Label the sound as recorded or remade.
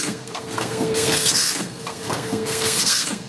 remade